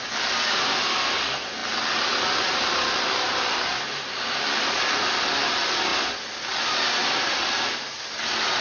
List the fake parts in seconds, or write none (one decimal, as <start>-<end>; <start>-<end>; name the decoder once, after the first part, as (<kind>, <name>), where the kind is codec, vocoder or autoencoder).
none

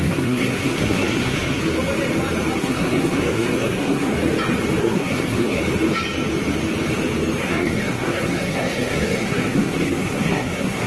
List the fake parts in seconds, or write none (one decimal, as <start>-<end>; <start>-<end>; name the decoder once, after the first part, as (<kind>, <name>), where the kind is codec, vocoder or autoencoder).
0.0-1.6 (codec, SNAC); 2.6-4.1; 4.8-5.6; 7.4-10.9